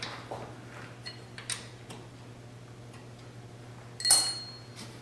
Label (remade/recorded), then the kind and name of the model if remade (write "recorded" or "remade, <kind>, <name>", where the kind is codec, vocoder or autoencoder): recorded